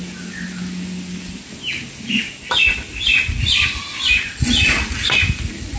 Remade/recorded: recorded